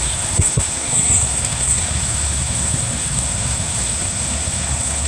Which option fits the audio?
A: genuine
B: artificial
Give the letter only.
B